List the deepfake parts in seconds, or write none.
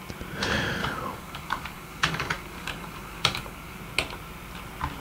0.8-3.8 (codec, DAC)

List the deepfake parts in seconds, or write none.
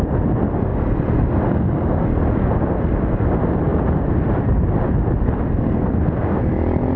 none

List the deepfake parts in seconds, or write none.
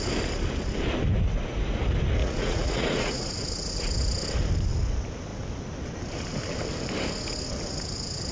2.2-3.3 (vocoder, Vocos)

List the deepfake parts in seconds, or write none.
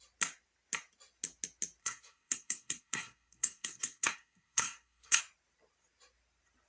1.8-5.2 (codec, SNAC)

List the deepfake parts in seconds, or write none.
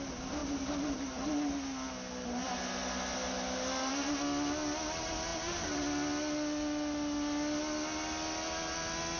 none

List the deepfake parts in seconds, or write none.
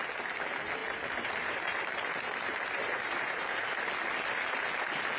0.8-3.9 (vocoder, BigVGAN v2)